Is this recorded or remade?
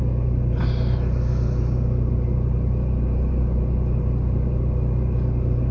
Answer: remade